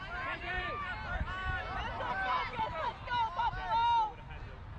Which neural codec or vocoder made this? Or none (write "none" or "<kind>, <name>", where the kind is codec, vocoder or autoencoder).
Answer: none